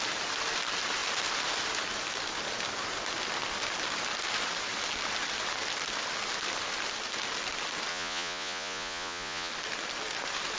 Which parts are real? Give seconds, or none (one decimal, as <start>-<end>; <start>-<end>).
0.0-7.9; 9.5-10.6